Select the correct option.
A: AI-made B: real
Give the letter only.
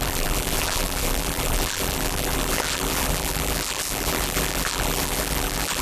A